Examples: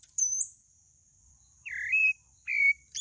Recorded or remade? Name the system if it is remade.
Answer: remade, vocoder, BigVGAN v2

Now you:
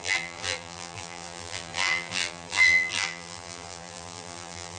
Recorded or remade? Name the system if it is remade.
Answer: remade, vocoder, BigVGAN v2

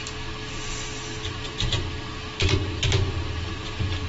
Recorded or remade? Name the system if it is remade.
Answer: recorded